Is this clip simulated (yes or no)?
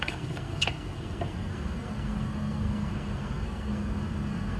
yes